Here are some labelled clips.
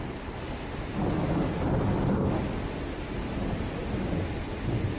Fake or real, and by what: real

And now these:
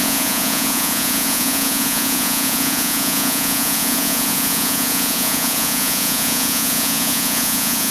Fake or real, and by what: fake, vocoder, Vocos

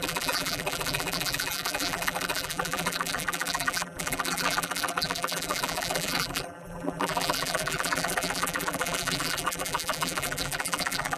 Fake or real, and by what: fake, vocoder, BigVGAN v2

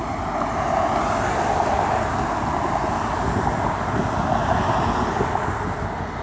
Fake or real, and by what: real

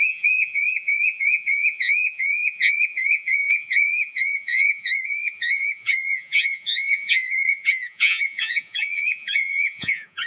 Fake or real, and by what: fake, vocoder, Vocos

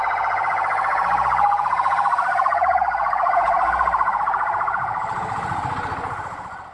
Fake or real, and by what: real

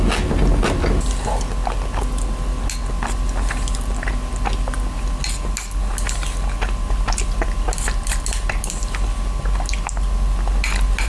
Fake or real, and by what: real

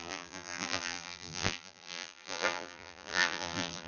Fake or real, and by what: fake, vocoder, BigVGAN v2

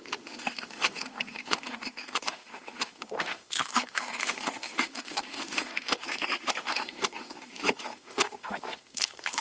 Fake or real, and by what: fake, autoencoder, DAC-VAE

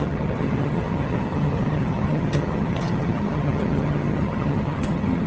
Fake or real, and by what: fake, vocoder, HiFi-GAN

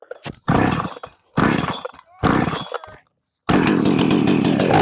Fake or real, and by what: real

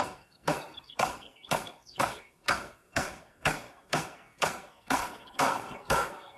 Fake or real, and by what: fake, codec, SNAC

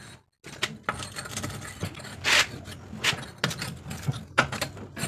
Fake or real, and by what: real